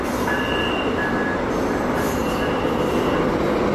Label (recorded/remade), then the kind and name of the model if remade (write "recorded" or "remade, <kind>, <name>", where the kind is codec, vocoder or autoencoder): recorded